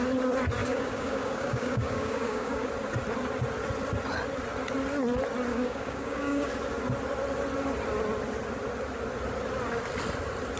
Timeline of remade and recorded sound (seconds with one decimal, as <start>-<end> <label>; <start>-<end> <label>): 0.0-0.6 recorded; 0.6-2.7 remade; 2.7-5.5 recorded; 5.5-6.5 remade; 6.5-10.6 recorded